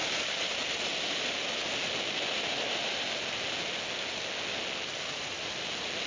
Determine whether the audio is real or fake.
real